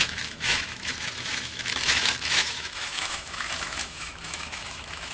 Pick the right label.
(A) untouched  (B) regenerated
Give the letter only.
B